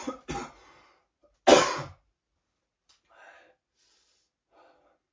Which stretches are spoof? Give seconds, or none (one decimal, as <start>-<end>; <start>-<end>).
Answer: none